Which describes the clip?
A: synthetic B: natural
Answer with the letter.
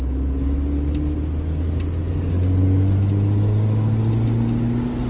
B